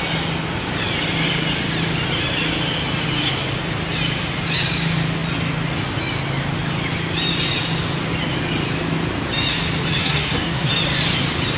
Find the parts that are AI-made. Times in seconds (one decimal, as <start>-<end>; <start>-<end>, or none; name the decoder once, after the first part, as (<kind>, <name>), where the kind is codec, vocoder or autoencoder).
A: 10.0-10.7 (codec, SNAC)